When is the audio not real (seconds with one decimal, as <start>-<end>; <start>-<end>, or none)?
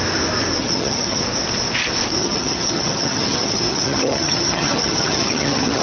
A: 0.6-1.2; 2.2-5.8